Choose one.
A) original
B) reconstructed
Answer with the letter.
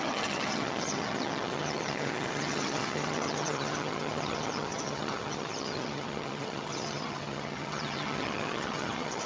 B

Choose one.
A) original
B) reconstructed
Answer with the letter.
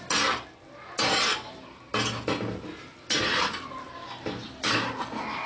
A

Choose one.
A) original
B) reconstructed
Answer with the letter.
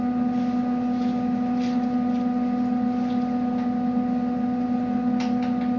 A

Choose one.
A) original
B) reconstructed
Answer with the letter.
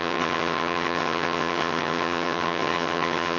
B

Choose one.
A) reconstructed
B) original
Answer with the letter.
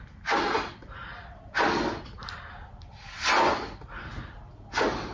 B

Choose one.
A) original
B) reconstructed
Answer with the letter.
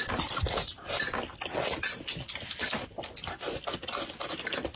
A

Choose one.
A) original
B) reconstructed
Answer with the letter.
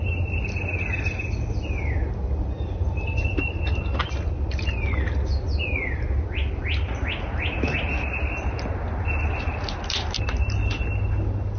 A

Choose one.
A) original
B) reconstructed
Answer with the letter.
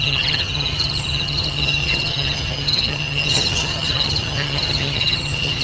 B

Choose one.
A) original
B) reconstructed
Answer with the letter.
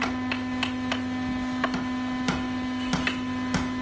A